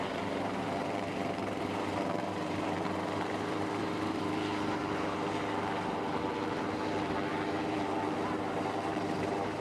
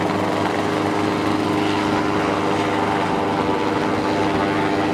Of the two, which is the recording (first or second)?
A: second